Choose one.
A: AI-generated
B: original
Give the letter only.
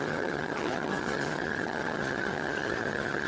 A